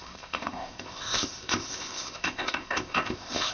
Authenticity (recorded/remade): remade